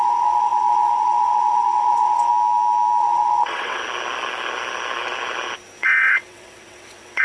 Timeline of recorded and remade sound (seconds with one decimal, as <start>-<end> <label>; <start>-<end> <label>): 0.0-2.3 remade; 2.3-3.0 recorded; 3.0-3.8 remade; 3.8-5.8 recorded; 5.8-7.2 remade